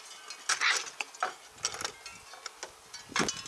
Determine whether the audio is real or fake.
real